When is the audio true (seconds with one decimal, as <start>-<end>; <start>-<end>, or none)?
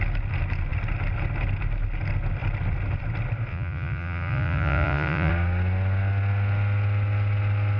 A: 0.0-3.5; 5.3-7.8